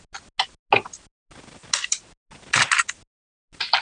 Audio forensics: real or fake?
real